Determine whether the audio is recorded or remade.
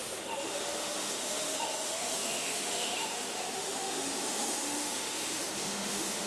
remade